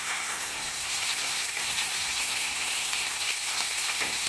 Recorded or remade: remade